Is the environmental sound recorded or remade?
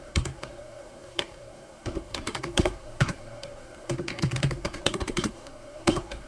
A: remade